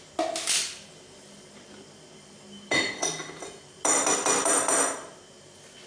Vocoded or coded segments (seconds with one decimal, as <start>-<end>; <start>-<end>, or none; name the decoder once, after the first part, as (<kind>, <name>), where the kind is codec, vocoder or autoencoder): none